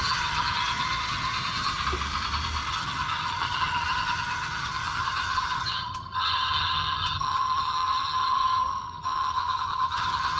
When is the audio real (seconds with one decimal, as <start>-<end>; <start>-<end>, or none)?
1.8-2.7